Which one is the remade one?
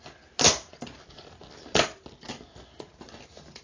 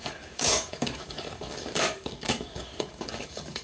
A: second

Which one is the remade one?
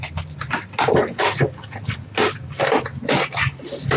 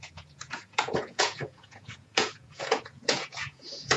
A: second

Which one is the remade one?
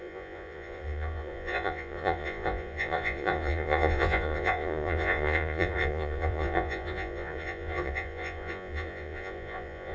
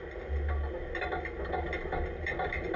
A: first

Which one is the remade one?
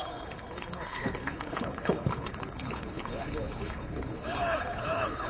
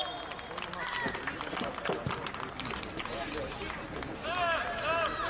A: first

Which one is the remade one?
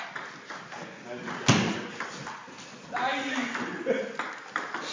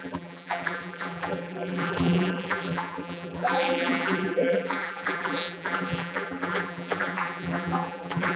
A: second